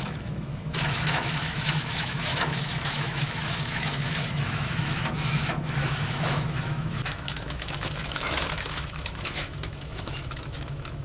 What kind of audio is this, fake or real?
fake